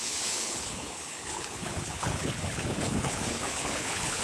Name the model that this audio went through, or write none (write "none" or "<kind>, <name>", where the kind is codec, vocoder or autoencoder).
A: codec, HILCodec